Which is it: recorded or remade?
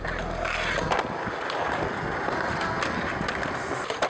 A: recorded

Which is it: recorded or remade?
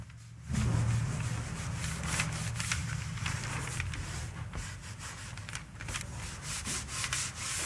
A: recorded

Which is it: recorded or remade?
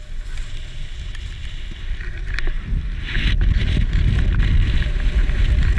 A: recorded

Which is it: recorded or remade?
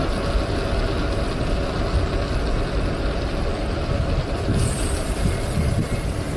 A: recorded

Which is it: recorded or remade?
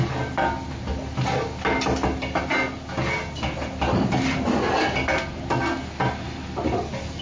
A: recorded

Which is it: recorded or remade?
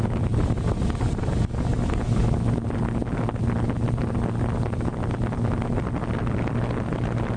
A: recorded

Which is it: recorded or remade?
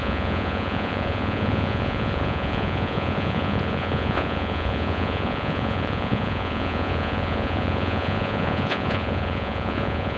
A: remade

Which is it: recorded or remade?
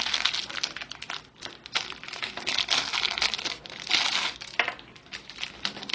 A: recorded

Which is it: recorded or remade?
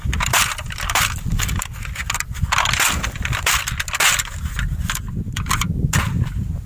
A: recorded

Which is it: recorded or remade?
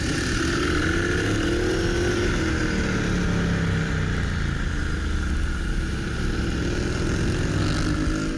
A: recorded